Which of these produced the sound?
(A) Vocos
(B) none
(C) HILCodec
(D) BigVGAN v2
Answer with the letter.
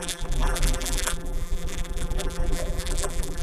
D